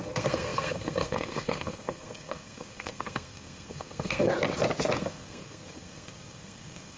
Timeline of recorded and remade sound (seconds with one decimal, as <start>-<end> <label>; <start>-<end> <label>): 0.0-4.3 remade; 4.3-5.0 recorded; 5.0-7.0 remade